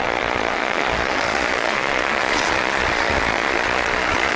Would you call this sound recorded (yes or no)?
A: no